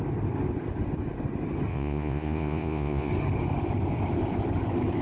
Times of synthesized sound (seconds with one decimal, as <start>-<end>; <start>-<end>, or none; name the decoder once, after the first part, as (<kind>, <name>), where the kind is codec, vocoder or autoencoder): 1.7-3.1 (vocoder, Vocos)